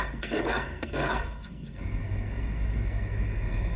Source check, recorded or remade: remade